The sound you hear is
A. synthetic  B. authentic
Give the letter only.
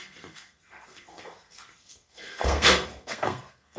A